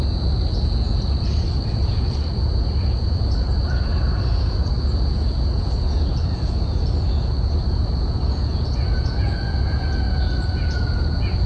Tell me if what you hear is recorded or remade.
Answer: remade